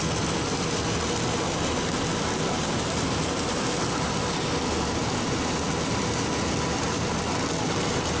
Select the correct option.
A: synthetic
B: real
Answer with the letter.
B